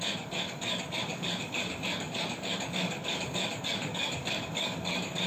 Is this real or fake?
fake